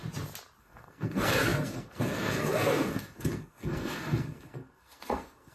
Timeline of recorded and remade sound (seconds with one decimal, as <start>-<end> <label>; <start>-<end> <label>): 0.0-0.6 recorded; 0.6-5.5 remade